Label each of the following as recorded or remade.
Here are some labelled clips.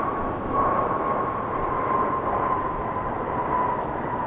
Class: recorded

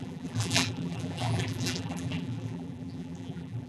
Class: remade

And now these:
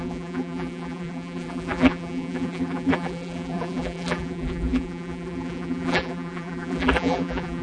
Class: remade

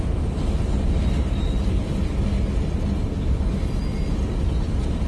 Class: recorded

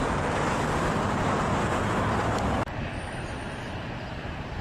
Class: remade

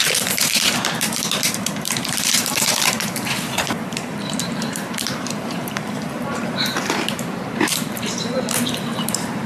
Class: remade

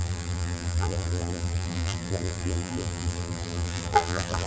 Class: remade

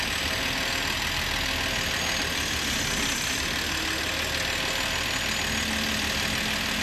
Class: recorded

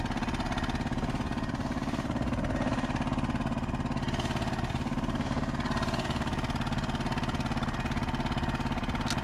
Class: recorded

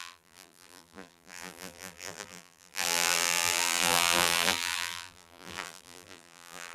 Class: remade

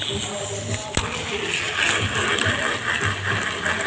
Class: recorded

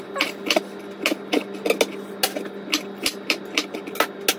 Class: recorded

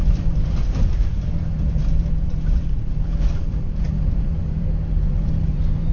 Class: remade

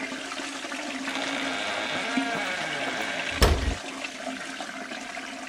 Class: recorded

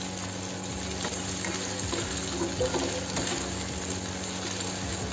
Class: recorded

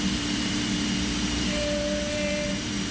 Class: remade